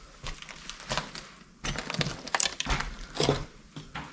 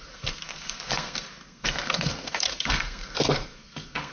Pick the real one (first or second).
first